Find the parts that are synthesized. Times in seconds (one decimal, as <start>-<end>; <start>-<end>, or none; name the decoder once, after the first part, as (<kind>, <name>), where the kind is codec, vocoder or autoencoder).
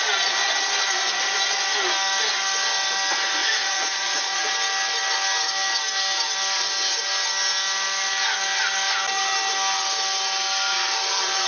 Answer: 3.4-4.5 (vocoder, Vocos)